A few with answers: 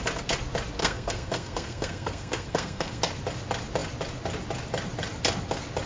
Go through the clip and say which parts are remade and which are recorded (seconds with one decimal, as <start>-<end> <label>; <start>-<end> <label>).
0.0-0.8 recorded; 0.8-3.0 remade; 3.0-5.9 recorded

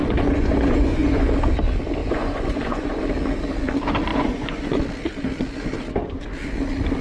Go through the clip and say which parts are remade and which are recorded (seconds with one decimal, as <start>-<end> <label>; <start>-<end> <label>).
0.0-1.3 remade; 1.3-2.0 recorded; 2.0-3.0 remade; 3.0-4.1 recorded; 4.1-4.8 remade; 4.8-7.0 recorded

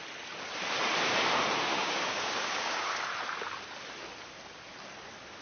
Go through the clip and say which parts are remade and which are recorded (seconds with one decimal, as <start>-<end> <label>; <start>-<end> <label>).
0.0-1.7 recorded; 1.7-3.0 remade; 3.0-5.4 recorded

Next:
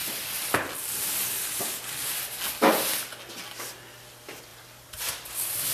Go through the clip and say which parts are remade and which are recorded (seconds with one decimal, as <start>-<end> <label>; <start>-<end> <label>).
0.0-5.7 recorded

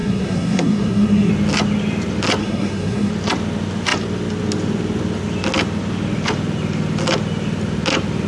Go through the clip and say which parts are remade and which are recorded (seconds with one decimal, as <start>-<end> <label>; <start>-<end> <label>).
0.0-1.3 remade; 1.3-2.4 recorded; 2.4-3.1 remade; 3.1-8.3 recorded